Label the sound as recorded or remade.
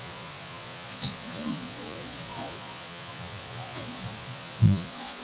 remade